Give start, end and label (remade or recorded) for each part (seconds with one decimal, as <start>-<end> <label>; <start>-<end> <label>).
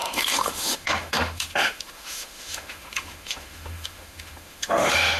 0.0-5.2 remade